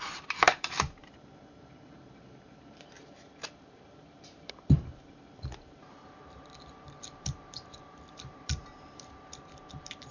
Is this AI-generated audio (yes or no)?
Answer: yes